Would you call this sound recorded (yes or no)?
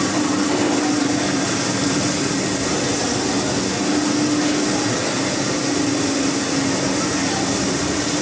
yes